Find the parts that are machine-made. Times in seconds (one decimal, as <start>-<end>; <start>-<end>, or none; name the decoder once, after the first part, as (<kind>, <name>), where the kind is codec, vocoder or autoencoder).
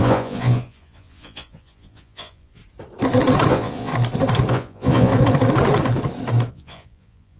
0.0-2.6 (vocoder, Vocos); 3.5-3.9; 4.5-5.1; 6.5-7.4